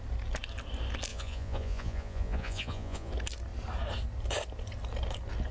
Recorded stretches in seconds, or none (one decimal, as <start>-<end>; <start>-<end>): 0.0-1.1; 3.1-5.5